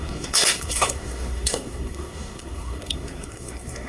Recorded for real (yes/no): no